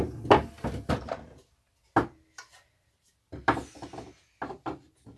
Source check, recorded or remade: recorded